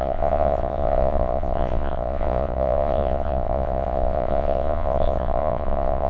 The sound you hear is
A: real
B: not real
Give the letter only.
B